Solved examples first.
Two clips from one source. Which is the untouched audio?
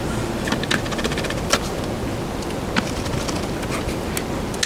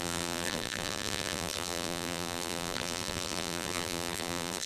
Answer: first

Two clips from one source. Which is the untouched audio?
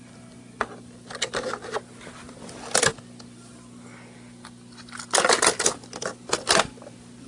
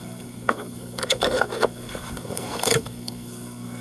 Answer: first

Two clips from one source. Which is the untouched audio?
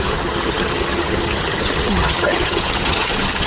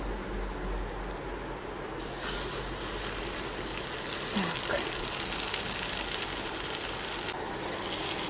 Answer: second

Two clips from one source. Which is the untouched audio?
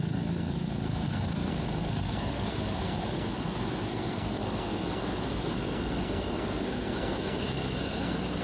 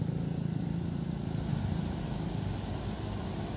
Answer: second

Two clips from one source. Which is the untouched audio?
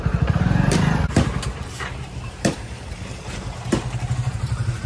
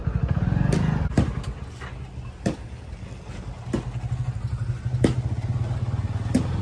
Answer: second